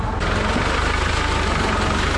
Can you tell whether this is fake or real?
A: real